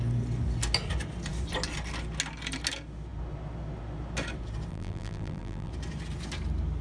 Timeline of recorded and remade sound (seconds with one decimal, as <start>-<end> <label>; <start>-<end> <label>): 0.0-4.7 recorded; 4.7-5.7 remade; 5.7-6.8 recorded